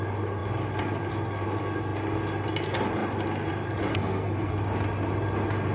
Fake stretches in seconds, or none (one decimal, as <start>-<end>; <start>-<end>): 3.9-4.5